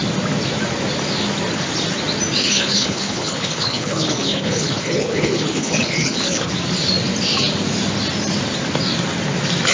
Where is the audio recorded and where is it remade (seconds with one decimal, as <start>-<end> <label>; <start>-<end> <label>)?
0.0-2.4 recorded; 2.4-6.5 remade; 6.5-9.7 recorded